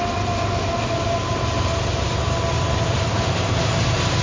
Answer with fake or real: fake